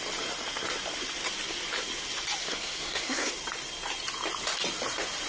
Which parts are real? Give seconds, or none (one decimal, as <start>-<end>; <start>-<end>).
0.0-2.4; 3.3-5.3